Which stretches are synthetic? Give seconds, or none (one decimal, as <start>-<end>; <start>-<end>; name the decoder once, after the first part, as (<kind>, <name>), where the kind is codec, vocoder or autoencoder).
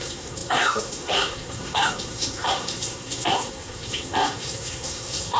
0.0-5.4 (codec, SNAC)